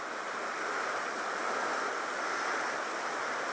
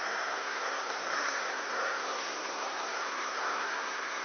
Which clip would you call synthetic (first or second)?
second